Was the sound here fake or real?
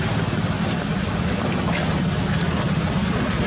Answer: real